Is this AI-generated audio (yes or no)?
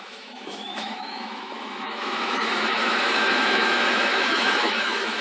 yes